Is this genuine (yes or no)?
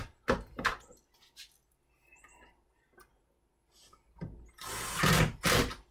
yes